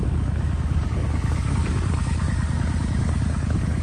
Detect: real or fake fake